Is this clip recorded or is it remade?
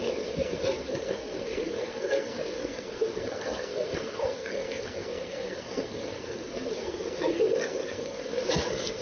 remade